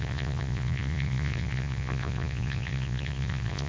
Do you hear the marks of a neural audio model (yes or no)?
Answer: yes